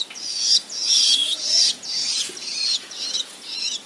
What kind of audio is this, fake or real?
fake